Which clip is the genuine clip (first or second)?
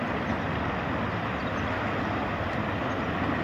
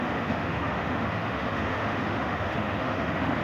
first